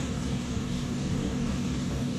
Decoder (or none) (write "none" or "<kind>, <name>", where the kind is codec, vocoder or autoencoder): codec, DAC